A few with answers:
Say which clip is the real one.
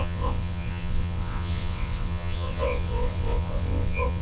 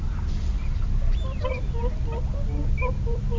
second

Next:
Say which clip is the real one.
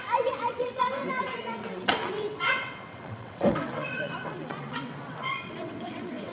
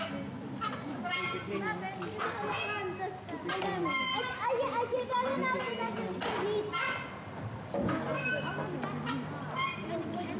second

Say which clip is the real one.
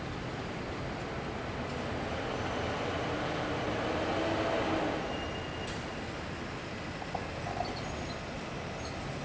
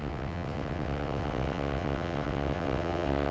first